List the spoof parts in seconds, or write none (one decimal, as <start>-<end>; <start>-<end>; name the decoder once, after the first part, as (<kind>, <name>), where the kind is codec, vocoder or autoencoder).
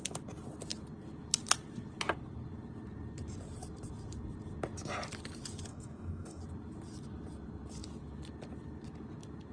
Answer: 5.7-6.4 (codec, DAC)